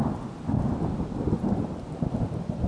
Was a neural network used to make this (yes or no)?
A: no